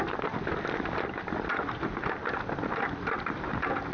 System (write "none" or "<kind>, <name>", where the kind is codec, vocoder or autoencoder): none